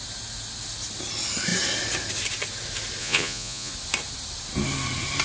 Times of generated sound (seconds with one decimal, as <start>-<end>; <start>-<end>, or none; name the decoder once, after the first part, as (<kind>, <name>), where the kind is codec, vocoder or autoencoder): 3.0-3.7 (vocoder, Vocos)